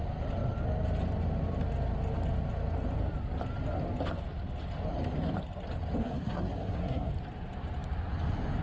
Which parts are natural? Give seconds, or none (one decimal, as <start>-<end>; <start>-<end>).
0.0-6.0; 7.1-8.6

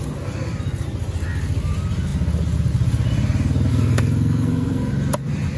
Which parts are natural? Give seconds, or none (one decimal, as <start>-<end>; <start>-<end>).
0.0-3.7; 4.9-5.6

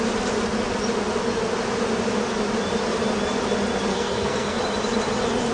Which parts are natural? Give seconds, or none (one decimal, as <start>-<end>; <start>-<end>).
0.0-3.9; 4.6-5.5